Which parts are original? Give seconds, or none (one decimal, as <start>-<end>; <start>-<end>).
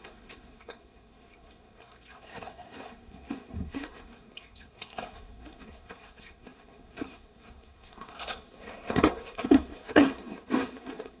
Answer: none